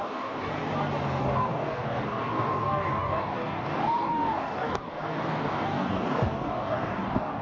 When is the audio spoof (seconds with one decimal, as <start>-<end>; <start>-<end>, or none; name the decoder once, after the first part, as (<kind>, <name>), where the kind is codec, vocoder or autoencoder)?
0.0-0.5 (codec, DAC); 1.2-7.4